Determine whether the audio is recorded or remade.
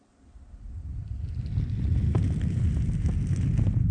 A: remade